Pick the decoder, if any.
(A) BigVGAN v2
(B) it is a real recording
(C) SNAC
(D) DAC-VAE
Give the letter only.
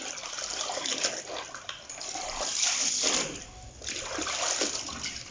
B